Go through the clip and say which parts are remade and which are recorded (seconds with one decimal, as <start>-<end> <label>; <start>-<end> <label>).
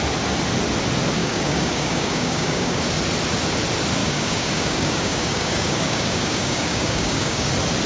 0.0-1.2 recorded; 1.2-2.8 remade; 2.8-4.0 recorded; 4.0-7.5 remade; 7.5-7.9 recorded